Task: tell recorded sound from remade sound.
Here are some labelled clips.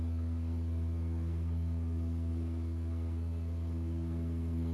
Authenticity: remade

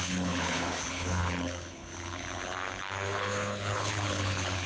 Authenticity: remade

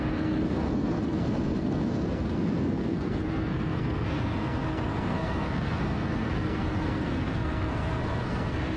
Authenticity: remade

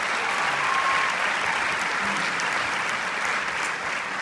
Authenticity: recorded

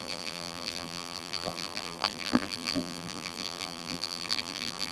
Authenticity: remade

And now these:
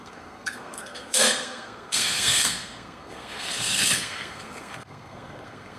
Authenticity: remade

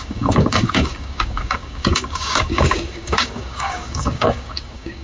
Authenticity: remade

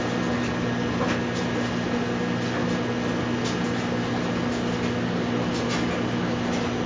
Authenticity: recorded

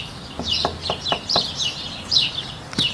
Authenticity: recorded